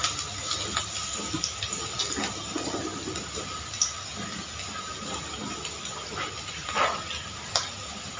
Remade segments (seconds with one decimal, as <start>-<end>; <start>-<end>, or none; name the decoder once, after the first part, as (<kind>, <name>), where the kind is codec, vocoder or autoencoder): none